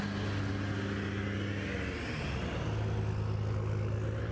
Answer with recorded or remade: recorded